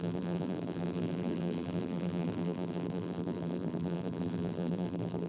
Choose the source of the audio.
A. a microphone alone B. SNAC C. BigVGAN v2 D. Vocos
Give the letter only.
C